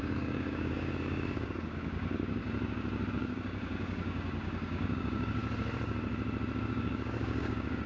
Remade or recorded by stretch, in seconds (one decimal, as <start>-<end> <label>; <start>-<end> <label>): 0.0-2.4 remade; 2.4-3.1 recorded; 3.1-5.4 remade; 5.4-6.6 recorded; 6.6-7.9 remade